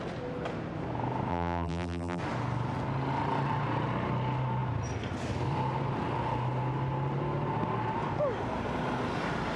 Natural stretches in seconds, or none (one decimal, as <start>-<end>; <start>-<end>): 0.0-1.3; 2.2-9.6